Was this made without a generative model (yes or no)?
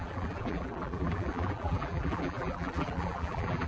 no